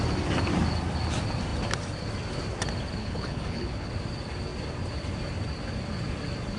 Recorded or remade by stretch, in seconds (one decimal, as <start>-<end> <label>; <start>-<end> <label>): 0.0-3.0 recorded; 3.0-3.9 remade; 3.9-6.6 recorded